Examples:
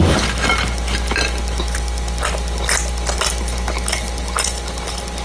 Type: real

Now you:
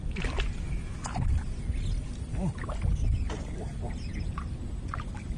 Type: real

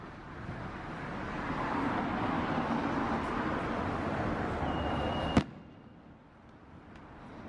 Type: real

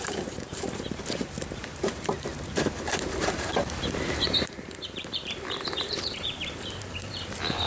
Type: fake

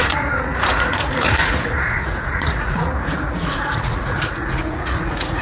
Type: fake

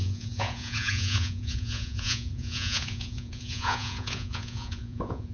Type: fake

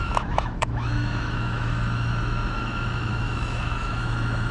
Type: fake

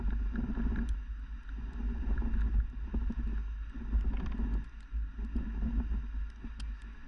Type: real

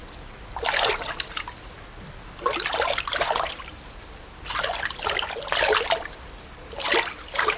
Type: real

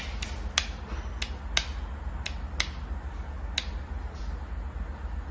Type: real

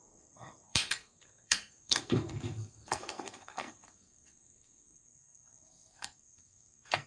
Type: fake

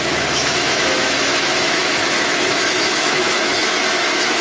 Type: fake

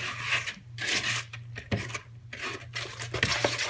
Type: real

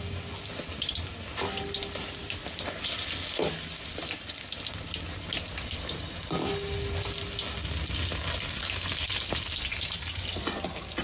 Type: real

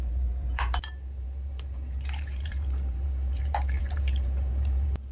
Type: fake